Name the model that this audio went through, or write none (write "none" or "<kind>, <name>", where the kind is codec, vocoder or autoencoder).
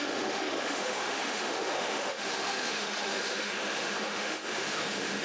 autoencoder, DAC-VAE